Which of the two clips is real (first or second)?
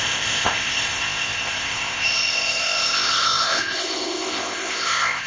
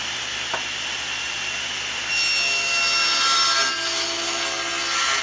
second